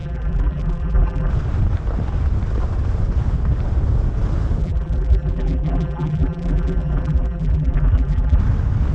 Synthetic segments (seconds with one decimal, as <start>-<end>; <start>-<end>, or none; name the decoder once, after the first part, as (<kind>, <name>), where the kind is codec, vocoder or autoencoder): 0.0-1.3 (vocoder, BigVGAN v2); 4.6-8.4